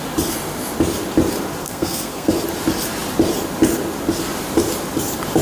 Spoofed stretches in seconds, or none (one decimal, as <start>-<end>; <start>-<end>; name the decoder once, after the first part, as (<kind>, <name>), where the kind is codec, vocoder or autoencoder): 1.6-2.3 (codec, SNAC)